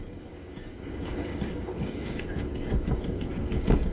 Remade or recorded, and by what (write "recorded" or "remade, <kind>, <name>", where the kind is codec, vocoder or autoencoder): remade, codec, DAC